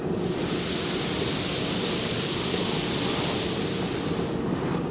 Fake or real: real